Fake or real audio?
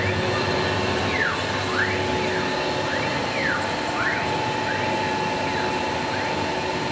real